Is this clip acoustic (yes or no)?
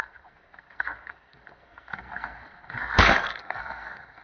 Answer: no